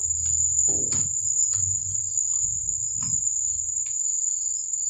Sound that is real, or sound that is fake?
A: real